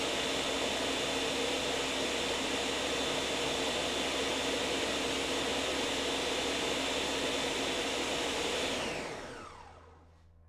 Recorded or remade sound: recorded